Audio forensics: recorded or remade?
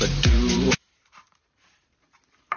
remade